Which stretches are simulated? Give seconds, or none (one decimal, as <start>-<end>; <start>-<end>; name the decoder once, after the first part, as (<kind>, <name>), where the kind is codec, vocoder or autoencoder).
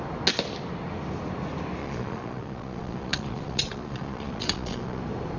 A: 1.8-5.0 (vocoder, Vocos)